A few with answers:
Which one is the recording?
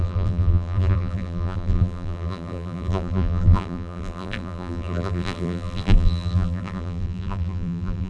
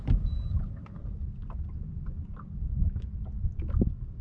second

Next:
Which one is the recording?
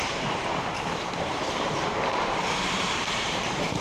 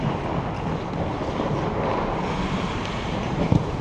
second